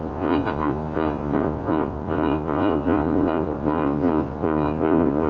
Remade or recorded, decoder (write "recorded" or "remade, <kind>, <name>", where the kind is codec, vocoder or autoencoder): remade, vocoder, Vocos